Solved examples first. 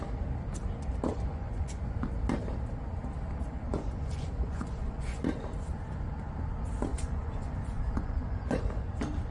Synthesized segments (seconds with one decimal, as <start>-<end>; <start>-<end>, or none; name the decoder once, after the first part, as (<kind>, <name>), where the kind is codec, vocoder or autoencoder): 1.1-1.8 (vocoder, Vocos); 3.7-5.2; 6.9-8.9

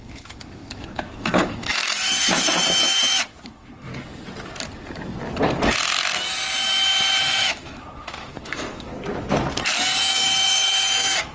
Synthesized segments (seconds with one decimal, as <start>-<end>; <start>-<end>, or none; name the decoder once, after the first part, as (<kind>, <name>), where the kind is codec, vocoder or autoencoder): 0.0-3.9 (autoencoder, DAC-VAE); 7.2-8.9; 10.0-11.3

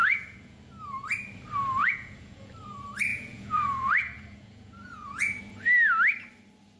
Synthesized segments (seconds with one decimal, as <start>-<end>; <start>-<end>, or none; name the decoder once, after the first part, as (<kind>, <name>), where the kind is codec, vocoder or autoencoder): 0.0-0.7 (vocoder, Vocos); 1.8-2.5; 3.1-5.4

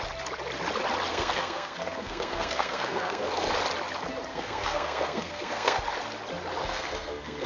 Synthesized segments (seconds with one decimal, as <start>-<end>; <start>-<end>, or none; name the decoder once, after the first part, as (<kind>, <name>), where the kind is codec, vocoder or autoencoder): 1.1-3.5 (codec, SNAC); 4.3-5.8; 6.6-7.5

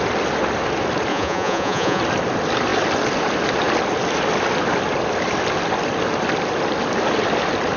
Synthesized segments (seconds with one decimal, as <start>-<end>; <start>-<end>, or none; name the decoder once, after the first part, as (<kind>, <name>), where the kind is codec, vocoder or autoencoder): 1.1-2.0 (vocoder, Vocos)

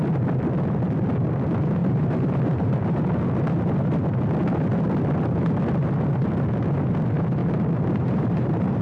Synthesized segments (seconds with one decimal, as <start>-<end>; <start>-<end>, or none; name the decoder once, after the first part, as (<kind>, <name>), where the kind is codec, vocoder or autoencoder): 1.8-2.8 (vocoder, BigVGAN v2); 7.4-8.8

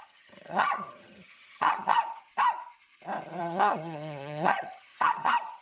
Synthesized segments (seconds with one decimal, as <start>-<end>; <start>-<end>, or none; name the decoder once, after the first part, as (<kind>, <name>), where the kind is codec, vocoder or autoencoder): 0.0-2.3 (vocoder, HiFi-GAN); 3.4-5.6

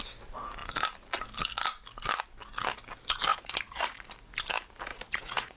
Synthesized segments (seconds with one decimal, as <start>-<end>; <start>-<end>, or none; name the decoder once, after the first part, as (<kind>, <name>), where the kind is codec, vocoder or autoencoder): 3.3-4.0 (vocoder, Vocos); 4.9-5.6